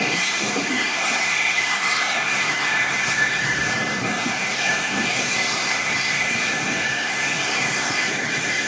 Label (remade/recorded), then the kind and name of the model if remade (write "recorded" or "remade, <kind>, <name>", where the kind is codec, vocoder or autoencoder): remade, codec, SNAC